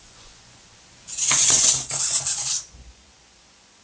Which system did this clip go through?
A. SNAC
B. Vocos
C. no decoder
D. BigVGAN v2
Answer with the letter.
B